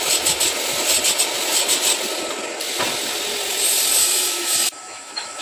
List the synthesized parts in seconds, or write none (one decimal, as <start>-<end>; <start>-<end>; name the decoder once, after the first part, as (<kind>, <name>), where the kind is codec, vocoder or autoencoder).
4.0-5.4 (autoencoder, DAC-VAE)